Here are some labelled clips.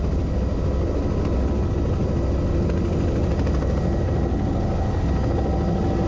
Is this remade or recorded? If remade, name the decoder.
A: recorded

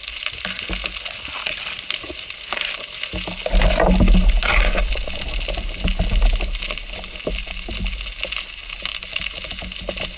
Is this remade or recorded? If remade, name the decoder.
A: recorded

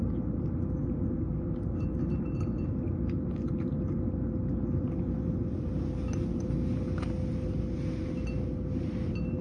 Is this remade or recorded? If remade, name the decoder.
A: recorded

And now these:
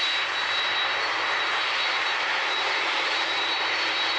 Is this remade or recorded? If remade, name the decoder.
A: remade, vocoder, BigVGAN v2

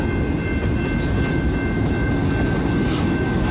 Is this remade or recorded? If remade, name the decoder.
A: recorded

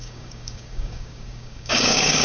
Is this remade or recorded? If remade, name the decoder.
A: remade, codec, DAC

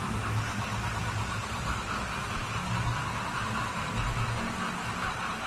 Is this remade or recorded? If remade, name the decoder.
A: recorded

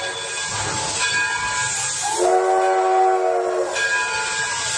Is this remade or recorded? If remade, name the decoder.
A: recorded